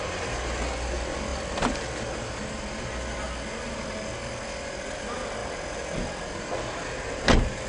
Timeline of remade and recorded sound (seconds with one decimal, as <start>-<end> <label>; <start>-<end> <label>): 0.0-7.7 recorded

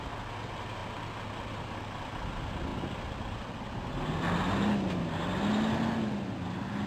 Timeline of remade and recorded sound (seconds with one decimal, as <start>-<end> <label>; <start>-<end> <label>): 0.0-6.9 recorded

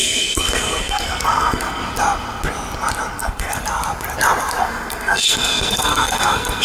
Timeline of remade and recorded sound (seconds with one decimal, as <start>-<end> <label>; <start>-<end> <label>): 0.0-1.8 remade; 1.8-3.1 recorded; 3.1-3.6 remade; 3.6-4.6 recorded; 4.6-6.6 remade

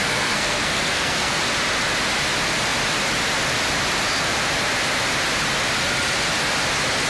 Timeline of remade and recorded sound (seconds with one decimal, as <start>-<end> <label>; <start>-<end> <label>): 0.0-1.4 remade; 1.4-7.1 recorded